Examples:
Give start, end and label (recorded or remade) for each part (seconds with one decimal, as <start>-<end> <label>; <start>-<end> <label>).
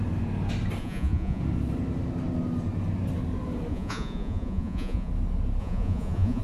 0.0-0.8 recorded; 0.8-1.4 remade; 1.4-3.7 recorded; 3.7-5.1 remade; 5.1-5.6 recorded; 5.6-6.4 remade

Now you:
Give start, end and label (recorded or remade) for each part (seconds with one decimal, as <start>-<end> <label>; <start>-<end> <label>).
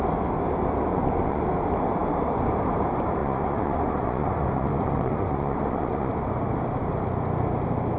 0.0-0.9 recorded; 0.9-1.4 remade; 1.4-3.2 recorded; 3.2-6.1 remade; 6.1-8.0 recorded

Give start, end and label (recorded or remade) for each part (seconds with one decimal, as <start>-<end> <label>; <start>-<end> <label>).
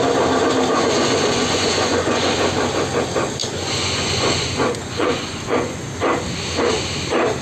0.0-0.7 recorded; 0.7-2.3 remade; 2.3-3.4 recorded; 3.4-5.9 remade; 5.9-7.4 recorded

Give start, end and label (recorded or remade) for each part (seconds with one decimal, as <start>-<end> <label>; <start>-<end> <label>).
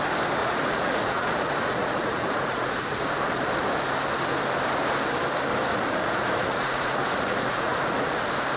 0.0-0.4 recorded; 0.4-3.1 remade; 3.1-5.7 recorded; 5.7-8.2 remade; 8.2-8.6 recorded